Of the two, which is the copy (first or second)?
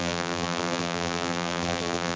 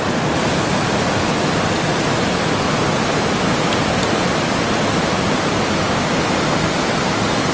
first